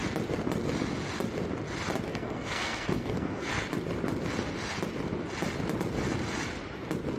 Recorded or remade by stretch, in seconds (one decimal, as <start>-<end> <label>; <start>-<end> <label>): 0.0-2.1 recorded; 2.1-3.5 remade; 3.5-7.2 recorded